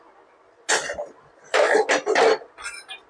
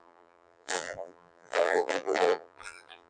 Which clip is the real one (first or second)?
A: first